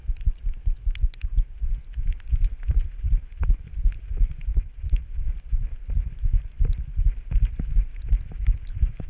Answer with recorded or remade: recorded